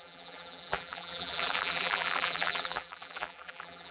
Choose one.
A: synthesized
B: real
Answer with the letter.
A